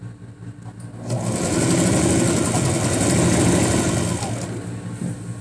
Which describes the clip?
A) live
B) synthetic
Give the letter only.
A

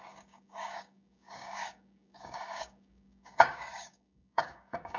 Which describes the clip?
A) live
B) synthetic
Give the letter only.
B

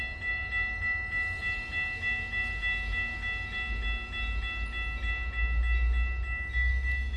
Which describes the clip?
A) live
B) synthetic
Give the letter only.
A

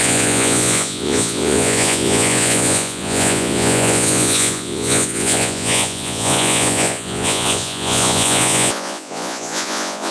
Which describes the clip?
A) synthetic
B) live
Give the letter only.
A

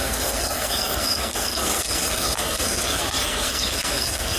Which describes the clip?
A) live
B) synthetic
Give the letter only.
B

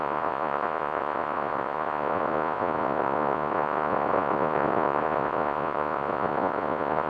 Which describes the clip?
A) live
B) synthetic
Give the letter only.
B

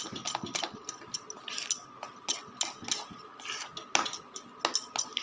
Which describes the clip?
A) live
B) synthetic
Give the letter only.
A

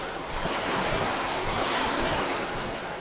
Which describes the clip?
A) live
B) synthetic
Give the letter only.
B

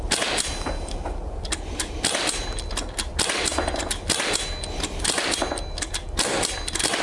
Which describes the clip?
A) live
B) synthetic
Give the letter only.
A